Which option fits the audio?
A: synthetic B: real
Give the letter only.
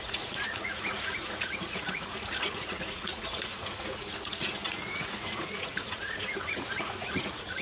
A